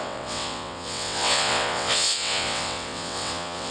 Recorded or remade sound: remade